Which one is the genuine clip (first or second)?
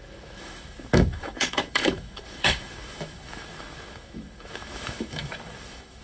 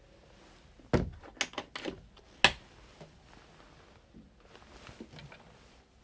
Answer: second